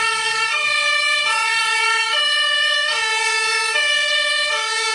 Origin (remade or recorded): remade